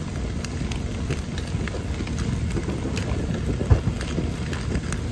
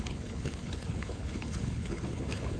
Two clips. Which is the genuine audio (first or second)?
first